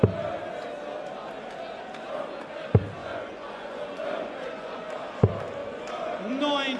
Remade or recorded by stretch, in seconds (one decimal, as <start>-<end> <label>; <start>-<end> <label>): 0.0-3.0 recorded; 3.0-4.9 remade; 4.9-5.6 recorded; 5.6-6.3 remade; 6.3-6.8 recorded